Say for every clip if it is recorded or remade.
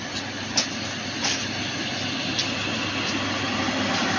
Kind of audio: recorded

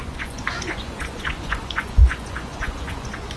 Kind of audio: remade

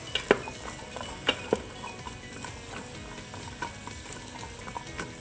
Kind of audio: recorded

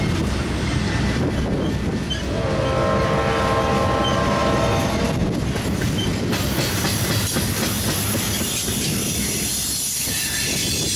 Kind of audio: recorded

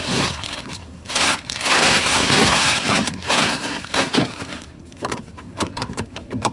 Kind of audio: remade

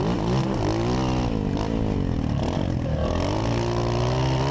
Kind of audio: recorded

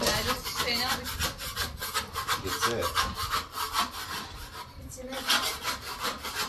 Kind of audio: remade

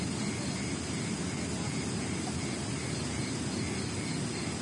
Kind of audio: recorded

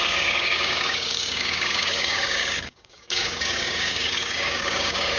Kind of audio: remade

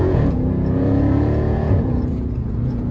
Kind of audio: remade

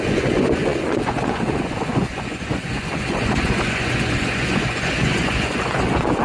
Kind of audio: remade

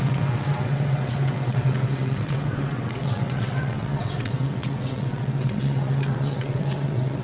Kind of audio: remade